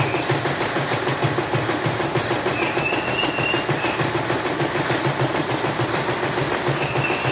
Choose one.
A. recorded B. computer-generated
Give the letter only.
A